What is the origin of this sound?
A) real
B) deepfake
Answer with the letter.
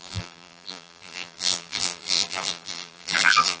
B